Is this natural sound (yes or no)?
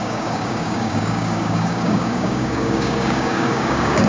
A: no